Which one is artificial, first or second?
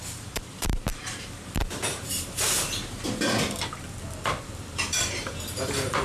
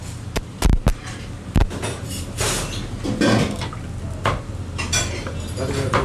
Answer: first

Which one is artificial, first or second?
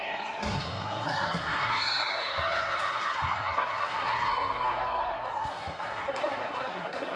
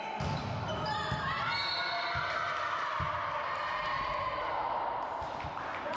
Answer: first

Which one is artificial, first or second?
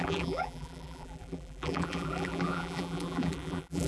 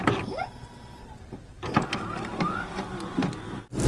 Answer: first